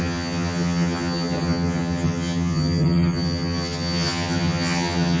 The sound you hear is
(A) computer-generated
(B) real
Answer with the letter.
A